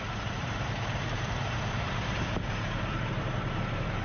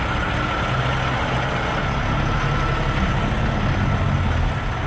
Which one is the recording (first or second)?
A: second